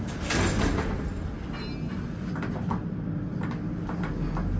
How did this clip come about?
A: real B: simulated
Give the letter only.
A